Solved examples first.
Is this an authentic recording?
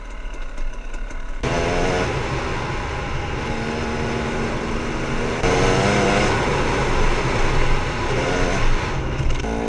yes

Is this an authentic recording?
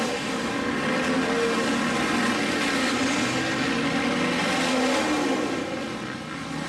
yes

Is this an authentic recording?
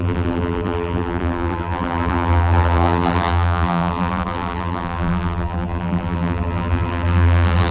no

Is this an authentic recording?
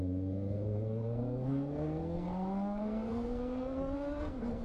no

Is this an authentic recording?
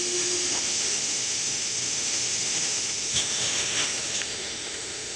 no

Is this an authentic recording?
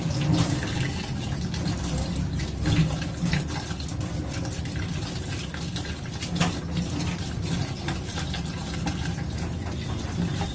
yes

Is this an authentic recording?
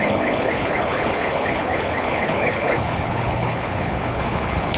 no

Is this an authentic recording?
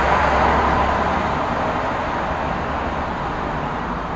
yes